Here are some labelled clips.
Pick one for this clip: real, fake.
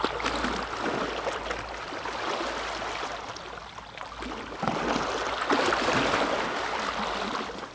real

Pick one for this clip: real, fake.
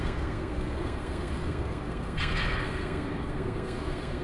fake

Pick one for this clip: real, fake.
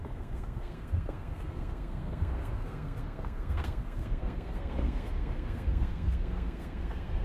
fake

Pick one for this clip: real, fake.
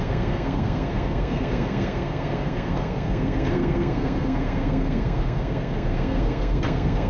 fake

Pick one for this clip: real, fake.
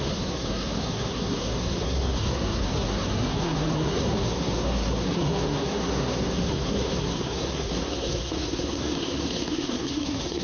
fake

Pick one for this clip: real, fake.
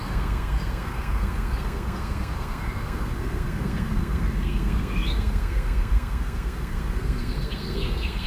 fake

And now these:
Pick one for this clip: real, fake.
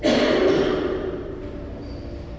real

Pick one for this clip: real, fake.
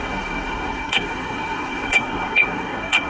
fake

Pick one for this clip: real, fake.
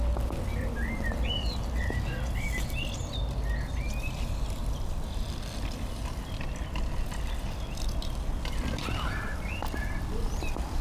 real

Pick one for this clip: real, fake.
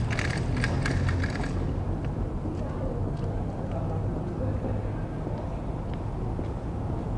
real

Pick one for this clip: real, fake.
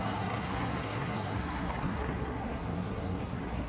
fake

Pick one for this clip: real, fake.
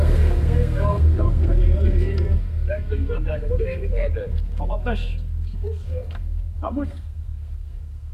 fake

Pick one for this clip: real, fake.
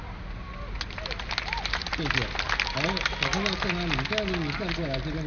real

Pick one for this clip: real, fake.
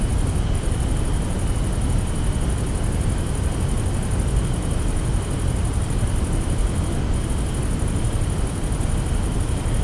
real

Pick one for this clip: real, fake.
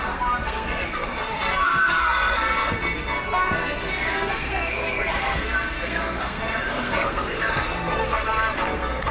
fake